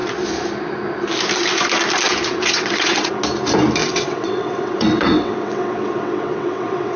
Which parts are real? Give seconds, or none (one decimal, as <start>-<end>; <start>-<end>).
0.0-2.3; 3.1-3.8